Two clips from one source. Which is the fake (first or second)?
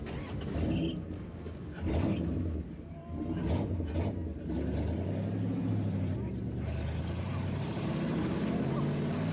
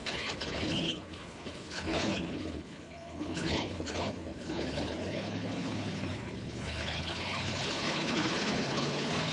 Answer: second